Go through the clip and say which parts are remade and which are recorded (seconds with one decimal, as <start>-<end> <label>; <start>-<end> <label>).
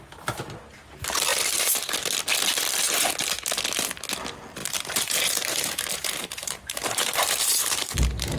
0.0-4.6 recorded; 4.6-8.4 remade